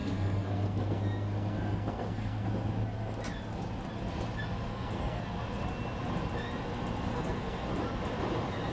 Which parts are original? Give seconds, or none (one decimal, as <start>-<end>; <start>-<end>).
2.5-4.7; 5.2-7.1; 7.7-8.7